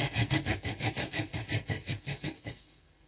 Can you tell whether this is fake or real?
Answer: fake